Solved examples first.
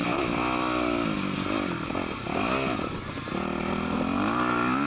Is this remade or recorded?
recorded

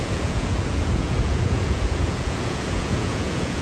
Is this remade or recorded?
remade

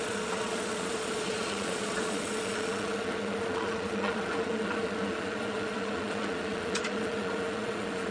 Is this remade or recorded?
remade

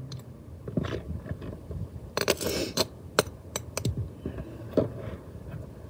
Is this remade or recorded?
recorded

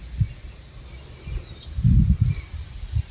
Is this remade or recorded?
recorded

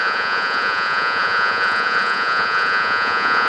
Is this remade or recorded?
remade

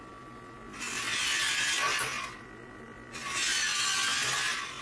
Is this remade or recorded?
recorded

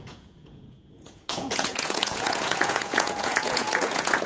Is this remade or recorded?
remade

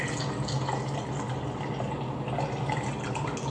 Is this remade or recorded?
recorded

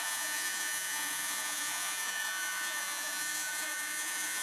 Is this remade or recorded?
remade